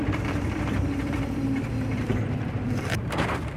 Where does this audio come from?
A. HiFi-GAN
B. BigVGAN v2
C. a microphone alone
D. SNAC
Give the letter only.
B